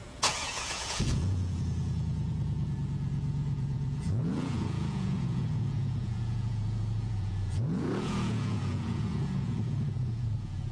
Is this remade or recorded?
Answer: remade